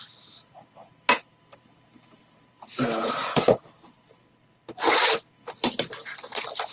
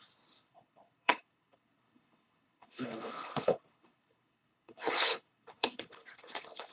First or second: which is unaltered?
first